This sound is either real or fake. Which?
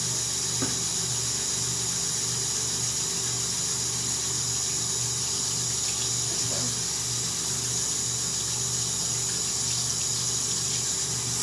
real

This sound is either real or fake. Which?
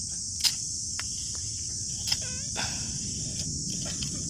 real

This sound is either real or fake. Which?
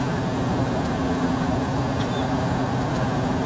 real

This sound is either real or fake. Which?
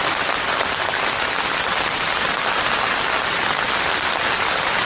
real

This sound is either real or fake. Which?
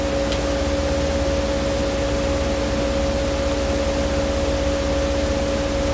real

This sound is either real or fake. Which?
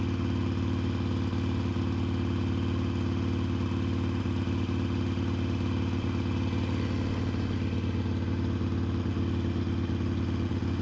real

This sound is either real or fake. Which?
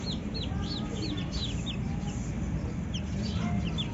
real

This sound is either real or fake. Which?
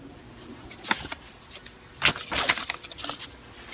real